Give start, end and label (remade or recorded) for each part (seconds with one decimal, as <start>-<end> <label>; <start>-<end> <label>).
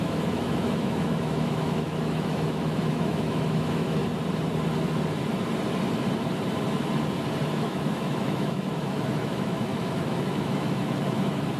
0.0-4.0 remade; 4.0-7.5 recorded; 7.5-11.6 remade